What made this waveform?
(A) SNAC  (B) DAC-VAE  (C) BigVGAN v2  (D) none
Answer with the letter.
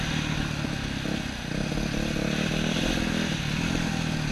D